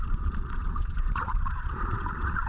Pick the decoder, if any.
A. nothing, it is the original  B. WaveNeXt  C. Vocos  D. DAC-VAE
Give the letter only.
C